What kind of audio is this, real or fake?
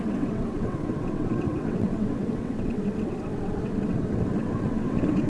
fake